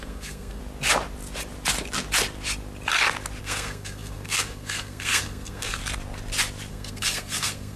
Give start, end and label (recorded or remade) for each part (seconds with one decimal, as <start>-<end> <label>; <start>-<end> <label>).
0.0-0.6 remade; 0.6-3.4 recorded; 3.4-5.8 remade; 5.8-6.7 recorded; 6.7-7.8 remade

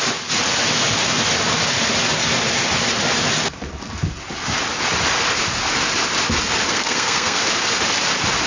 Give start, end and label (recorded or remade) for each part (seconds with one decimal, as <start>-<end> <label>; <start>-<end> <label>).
0.0-6.7 recorded; 6.7-7.4 remade; 7.4-8.5 recorded

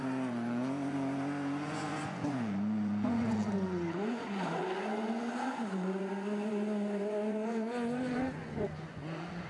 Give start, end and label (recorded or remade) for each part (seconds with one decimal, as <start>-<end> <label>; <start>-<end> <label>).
0.0-4.6 remade; 4.6-5.4 recorded; 5.4-9.5 remade

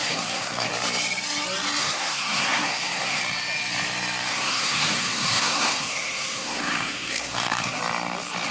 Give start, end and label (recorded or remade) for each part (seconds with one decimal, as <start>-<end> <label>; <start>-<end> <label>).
0.0-0.7 remade; 0.7-1.8 recorded; 1.8-3.2 remade; 3.2-4.3 recorded; 4.3-7.8 remade; 7.8-8.5 recorded